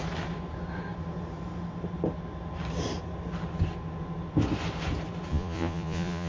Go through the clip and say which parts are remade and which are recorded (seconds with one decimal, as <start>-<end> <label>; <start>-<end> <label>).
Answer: 0.0-5.3 recorded; 5.3-6.3 remade